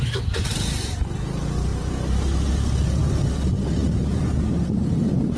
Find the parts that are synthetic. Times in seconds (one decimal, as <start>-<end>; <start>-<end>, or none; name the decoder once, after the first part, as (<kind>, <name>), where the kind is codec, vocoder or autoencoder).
none